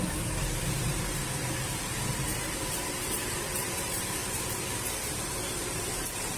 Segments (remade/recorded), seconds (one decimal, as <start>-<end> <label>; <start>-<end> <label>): 0.0-4.2 remade; 4.2-5.1 recorded; 5.1-6.4 remade